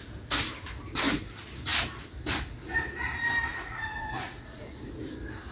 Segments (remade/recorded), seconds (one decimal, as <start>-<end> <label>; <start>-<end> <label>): 0.0-3.5 recorded; 3.5-4.8 remade; 4.8-5.5 recorded